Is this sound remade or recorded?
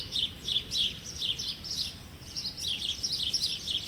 remade